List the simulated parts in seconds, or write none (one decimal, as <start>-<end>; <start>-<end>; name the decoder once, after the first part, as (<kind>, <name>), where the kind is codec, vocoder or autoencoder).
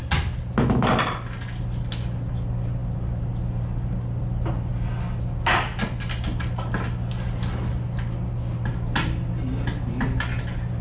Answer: none